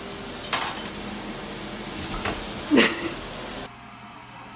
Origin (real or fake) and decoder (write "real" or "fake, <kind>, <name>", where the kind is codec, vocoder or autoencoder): real